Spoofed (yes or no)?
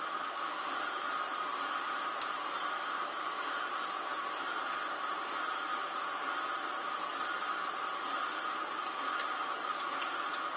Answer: no